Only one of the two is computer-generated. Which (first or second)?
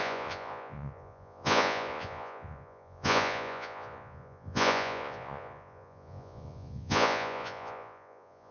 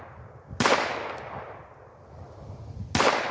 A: first